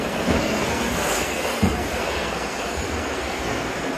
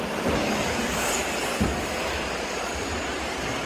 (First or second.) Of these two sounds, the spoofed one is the first